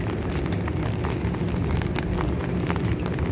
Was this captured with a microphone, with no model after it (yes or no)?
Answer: yes